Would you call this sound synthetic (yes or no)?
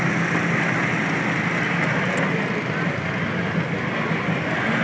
no